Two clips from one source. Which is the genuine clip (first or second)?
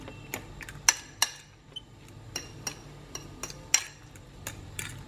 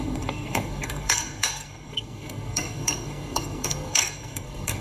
first